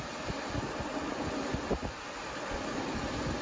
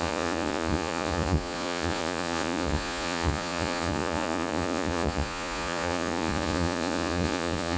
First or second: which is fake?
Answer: second